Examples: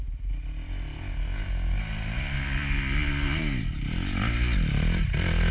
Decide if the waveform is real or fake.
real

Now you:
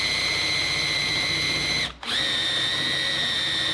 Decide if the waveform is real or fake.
real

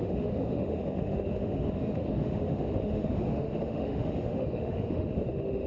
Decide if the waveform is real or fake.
fake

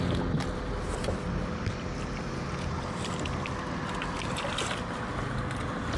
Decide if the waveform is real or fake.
real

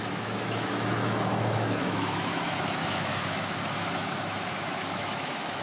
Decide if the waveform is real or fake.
fake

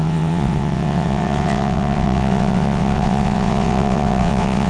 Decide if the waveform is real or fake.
fake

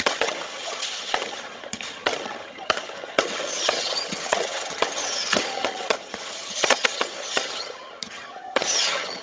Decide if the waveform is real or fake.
fake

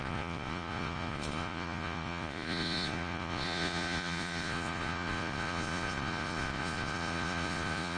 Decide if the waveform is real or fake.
fake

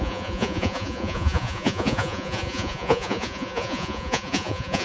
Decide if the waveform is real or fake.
fake